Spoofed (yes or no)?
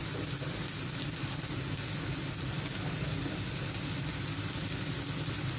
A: no